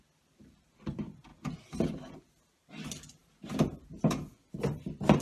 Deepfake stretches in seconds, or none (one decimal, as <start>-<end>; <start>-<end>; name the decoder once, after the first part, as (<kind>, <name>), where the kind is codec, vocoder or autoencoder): 0.0-5.2 (vocoder, BigVGAN v2)